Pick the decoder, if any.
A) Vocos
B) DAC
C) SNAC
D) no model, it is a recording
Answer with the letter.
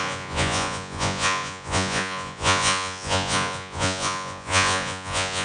A